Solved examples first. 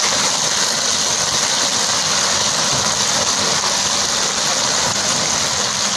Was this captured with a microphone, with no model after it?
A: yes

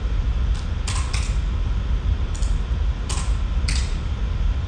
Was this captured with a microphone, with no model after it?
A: yes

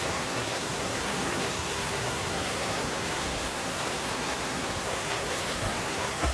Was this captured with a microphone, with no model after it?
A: no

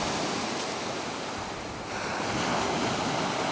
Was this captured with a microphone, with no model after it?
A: yes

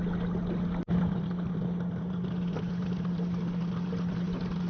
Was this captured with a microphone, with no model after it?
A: yes